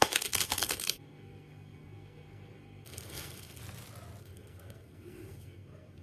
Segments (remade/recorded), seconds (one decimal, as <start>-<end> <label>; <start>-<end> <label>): 0.0-3.6 remade; 3.6-4.2 recorded; 4.2-6.0 remade